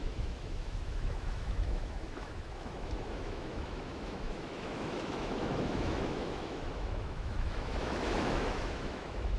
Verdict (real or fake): fake